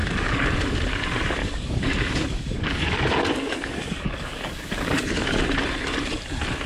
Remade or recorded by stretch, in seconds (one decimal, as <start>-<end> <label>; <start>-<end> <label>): 0.0-0.5 remade; 0.5-1.4 recorded; 1.4-5.4 remade; 5.4-6.7 recorded